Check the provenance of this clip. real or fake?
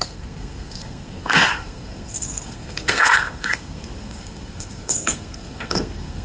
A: fake